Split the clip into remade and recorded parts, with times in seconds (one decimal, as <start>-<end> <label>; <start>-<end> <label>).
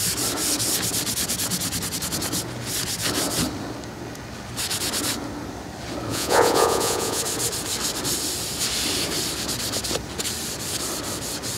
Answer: 0.0-6.1 recorded; 6.1-7.2 remade; 7.2-11.6 recorded